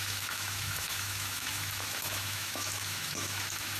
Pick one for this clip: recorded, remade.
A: remade